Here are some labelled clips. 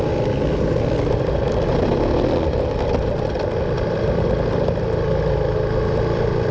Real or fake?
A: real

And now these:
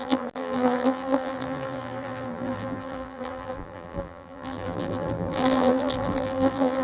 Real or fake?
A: fake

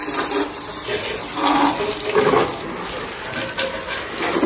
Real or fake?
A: real